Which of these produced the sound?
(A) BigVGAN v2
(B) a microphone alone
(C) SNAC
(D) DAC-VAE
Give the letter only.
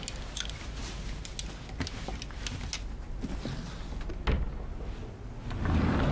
B